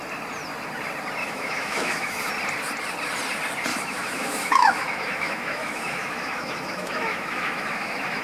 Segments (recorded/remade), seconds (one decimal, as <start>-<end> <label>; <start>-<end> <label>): 0.0-1.2 recorded; 1.2-2.3 remade; 2.3-3.7 recorded; 3.7-8.2 remade